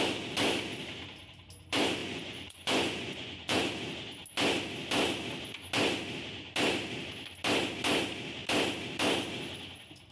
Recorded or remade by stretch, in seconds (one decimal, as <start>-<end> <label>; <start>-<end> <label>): 0.0-2.0 recorded; 2.0-3.6 remade; 3.6-10.1 recorded